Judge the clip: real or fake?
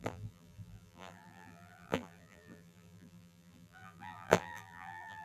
fake